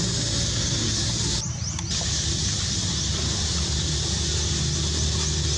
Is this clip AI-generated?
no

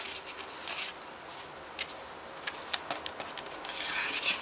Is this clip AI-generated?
no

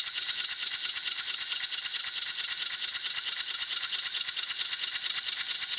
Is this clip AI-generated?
yes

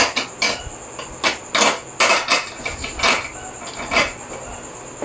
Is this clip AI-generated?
no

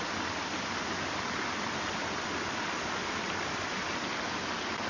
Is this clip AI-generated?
no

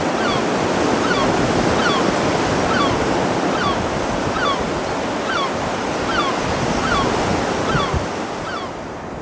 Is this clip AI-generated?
no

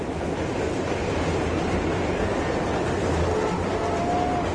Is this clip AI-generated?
no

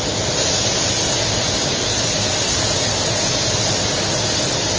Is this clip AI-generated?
no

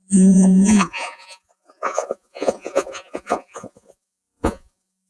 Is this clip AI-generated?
yes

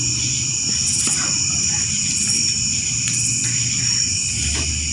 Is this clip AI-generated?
no